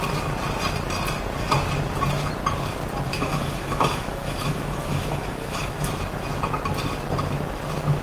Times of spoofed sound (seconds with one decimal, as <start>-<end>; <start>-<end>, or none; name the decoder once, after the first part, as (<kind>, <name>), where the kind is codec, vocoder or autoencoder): 3.1-5.9 (autoencoder, DAC-VAE)